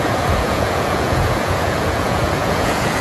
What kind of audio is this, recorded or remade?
remade